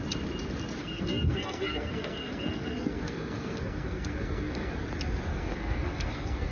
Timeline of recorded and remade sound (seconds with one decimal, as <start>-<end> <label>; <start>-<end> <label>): 0.0-0.8 recorded; 0.8-4.7 remade; 4.7-5.3 recorded; 5.3-6.5 remade